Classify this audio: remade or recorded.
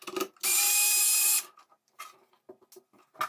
recorded